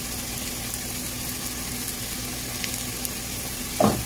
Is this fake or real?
real